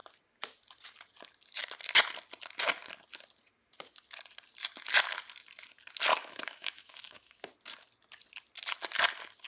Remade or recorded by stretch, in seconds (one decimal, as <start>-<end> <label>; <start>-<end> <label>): 0.0-6.1 recorded; 6.1-7.4 remade; 7.4-9.5 recorded